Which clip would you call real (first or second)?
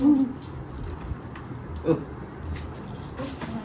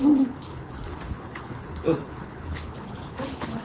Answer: first